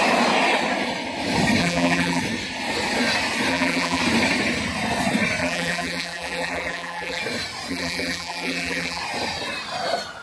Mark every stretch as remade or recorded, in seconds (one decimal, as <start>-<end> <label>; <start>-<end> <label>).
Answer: 0.0-1.6 recorded; 1.6-2.2 remade; 2.2-3.5 recorded; 3.5-4.0 remade; 4.0-5.4 recorded; 5.4-7.2 remade; 7.2-7.7 recorded; 7.7-9.0 remade; 9.0-10.2 recorded